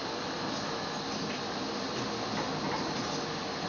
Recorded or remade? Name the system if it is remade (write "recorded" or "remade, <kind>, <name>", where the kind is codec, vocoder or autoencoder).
recorded